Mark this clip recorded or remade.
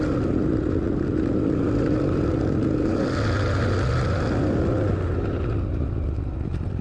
recorded